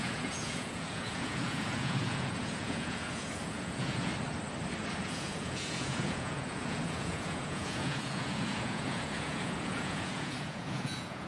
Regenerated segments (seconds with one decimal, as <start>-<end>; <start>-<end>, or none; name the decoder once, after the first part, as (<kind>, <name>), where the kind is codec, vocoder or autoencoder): 0.0-4.1 (vocoder, Vocos); 5.0-11.3